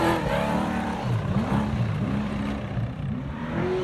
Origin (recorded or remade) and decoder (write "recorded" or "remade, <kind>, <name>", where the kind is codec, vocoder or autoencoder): remade, vocoder, BigVGAN v2